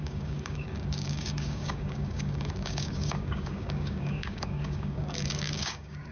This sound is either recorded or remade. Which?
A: remade